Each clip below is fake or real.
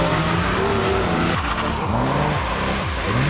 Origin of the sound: real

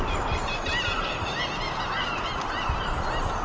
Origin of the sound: real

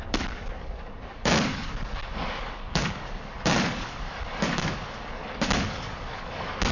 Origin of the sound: fake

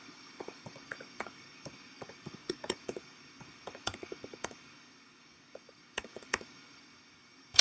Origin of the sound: fake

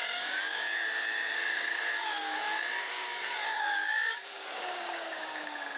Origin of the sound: fake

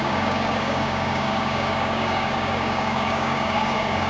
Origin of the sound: fake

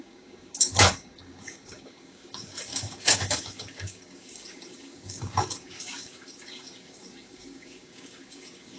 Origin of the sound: fake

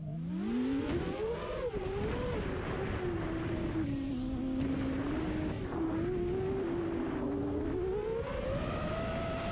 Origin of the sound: real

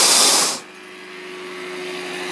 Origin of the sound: real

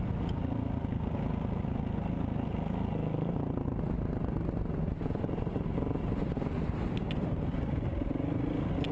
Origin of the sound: real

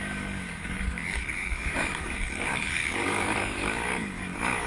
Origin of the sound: fake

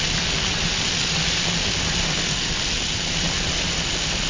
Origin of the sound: real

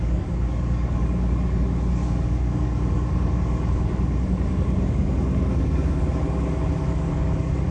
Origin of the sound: fake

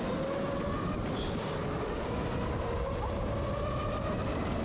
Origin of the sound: real